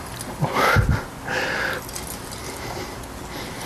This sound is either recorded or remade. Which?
recorded